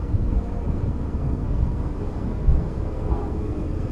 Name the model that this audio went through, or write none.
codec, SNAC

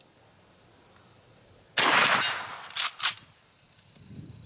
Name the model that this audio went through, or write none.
none